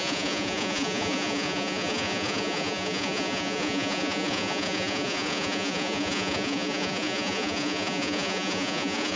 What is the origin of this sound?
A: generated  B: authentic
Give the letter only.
A